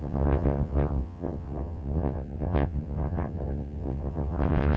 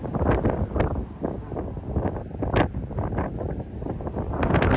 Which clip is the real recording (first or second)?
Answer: second